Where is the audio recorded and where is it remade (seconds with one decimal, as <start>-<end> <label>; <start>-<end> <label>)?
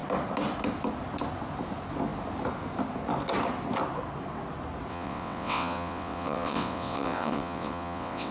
0.0-4.9 recorded; 4.9-8.3 remade